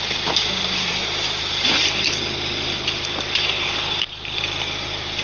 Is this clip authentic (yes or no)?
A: yes